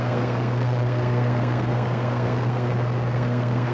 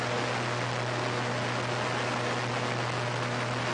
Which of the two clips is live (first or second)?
second